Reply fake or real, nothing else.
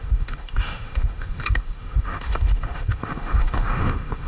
fake